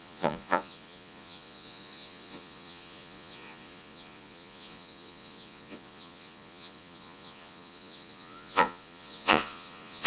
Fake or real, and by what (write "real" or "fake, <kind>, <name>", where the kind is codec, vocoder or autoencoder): fake, vocoder, Vocos